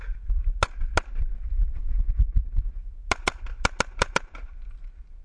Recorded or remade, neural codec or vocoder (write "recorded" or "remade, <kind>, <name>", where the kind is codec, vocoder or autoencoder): recorded